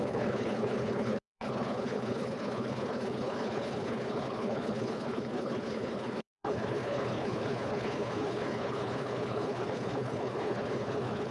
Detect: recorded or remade remade